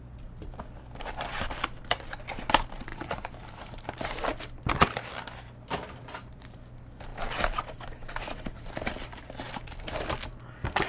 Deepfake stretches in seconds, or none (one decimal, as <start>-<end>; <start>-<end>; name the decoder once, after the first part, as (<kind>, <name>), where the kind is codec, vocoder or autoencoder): 2.9-4.6 (vocoder, BigVGAN v2)

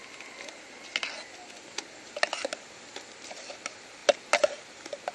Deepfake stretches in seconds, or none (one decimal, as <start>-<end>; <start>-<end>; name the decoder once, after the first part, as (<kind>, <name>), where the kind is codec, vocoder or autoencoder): none

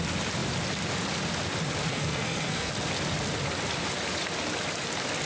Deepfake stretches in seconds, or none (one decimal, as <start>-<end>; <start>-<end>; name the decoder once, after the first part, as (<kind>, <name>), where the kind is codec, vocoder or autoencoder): 1.9-2.7 (codec, SNAC)

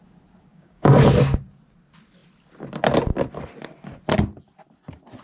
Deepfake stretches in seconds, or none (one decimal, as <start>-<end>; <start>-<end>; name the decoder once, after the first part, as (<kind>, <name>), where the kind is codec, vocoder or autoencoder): 0.5-1.0 (codec, DAC)

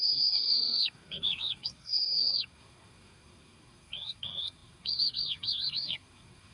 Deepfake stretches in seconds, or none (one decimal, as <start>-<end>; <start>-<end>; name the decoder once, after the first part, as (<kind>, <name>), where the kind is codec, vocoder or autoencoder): 0.0-6.5 (codec, SNAC)